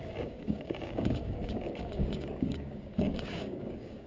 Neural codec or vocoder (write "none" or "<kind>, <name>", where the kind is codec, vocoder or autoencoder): codec, DAC